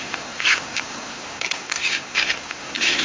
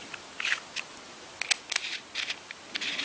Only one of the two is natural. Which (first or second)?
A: second